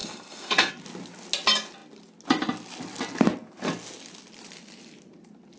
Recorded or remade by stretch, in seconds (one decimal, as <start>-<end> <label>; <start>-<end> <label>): 0.0-0.7 remade; 0.7-5.6 recorded